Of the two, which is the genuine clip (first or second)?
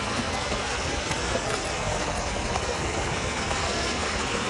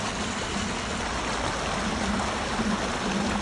second